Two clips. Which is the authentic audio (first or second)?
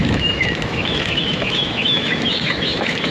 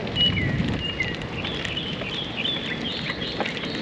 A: second